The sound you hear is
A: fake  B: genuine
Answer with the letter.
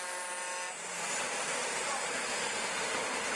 A